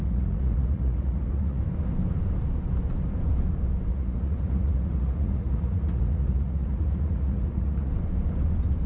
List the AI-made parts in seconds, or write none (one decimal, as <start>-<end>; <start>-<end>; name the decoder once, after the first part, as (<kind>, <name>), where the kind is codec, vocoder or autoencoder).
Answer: 0.0-1.6 (vocoder, Vocos); 3.9-7.9